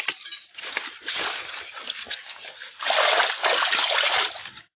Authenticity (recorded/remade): recorded